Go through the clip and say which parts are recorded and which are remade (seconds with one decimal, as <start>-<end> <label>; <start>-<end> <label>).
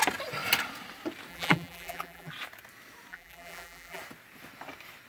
0.0-1.3 recorded; 1.3-2.3 remade; 2.3-3.1 recorded; 3.1-4.0 remade; 4.0-5.1 recorded